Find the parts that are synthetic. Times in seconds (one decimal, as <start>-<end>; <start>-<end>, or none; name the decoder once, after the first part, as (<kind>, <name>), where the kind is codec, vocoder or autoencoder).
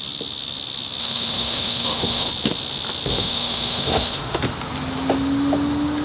1.0-2.3 (autoencoder, DAC-VAE); 3.1-4.4